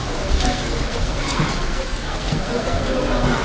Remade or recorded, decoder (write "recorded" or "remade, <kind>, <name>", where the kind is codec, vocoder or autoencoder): remade, codec, SNAC